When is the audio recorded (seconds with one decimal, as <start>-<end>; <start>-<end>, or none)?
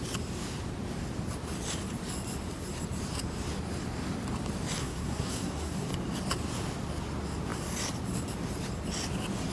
0.0-4.8; 5.9-9.5